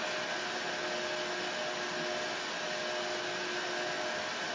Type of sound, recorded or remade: recorded